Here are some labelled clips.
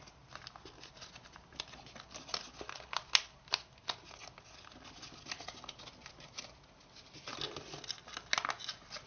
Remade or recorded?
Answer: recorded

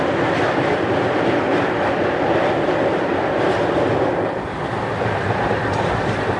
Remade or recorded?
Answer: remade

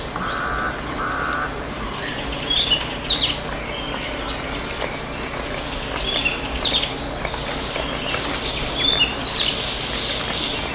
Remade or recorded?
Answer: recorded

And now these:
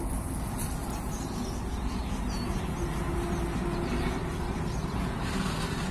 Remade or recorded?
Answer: recorded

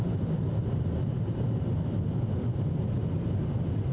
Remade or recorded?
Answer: recorded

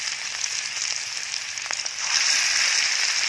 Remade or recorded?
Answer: recorded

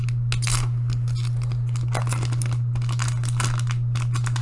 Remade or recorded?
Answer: recorded